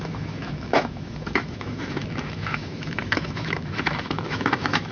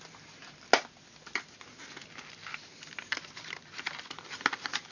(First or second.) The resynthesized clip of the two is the first